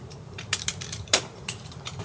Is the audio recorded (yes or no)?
no